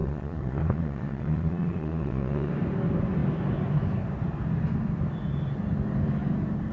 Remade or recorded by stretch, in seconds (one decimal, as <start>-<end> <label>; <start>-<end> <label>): 0.0-2.5 remade; 2.5-6.7 recorded